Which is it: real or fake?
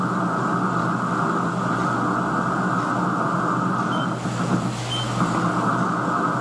real